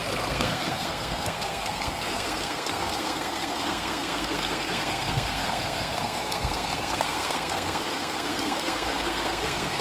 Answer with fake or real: fake